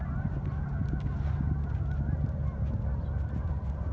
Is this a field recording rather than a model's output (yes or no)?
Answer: no